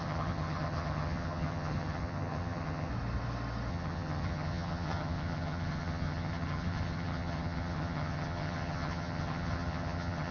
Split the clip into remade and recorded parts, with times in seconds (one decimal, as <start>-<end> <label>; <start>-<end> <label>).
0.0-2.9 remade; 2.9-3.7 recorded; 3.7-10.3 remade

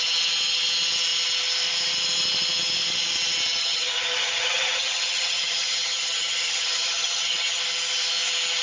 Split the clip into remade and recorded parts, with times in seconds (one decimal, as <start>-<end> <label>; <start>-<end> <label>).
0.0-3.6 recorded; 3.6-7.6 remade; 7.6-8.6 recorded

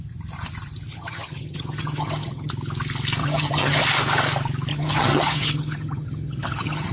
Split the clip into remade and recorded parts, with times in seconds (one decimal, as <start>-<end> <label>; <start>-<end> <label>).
0.0-0.9 recorded; 0.9-2.5 remade; 2.5-3.2 recorded; 3.2-3.8 remade; 3.8-4.7 recorded; 4.7-6.9 remade

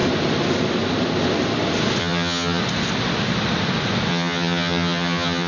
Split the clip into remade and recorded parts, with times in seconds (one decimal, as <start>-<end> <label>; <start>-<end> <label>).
0.0-2.0 recorded; 2.0-2.6 remade; 2.6-4.1 recorded; 4.1-5.5 remade